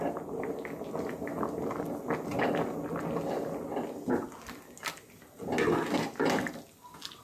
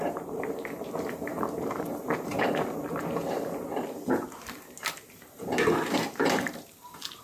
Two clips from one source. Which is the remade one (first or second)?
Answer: second